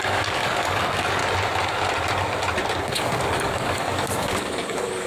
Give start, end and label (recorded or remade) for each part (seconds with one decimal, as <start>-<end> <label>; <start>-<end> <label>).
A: 0.0-1.2 remade; 1.2-2.8 recorded; 2.8-5.1 remade